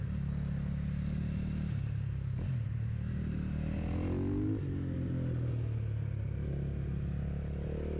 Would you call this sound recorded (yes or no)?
yes